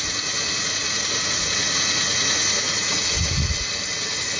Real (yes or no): no